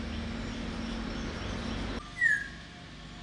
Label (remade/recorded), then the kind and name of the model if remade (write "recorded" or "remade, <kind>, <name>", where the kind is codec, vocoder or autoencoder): recorded